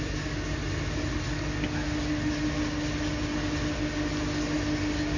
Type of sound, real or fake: real